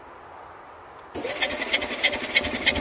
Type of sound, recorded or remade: recorded